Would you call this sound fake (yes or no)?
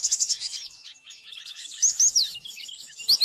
yes